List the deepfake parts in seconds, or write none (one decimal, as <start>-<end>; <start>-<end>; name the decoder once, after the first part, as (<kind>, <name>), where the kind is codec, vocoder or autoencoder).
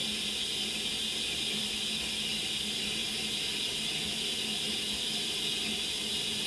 none